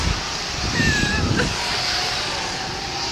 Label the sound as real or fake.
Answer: fake